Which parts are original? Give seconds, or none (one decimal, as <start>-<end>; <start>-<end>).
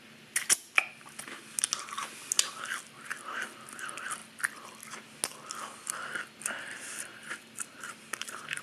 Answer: 0.0-7.1